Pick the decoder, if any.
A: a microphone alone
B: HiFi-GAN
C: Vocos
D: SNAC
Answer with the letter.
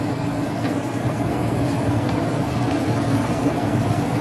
D